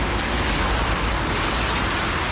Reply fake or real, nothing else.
real